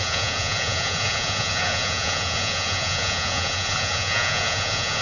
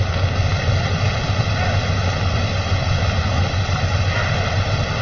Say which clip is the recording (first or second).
second